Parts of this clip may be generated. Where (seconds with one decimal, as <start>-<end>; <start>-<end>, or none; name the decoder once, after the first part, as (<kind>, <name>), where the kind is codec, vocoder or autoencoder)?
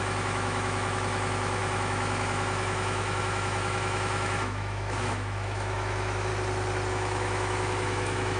0.0-6.3 (autoencoder, DAC-VAE); 6.9-8.4